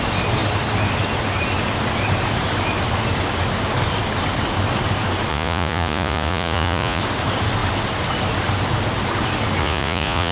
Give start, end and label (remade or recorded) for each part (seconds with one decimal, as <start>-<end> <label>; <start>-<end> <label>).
0.0-5.3 recorded; 5.3-7.0 remade; 7.0-9.6 recorded; 9.6-10.3 remade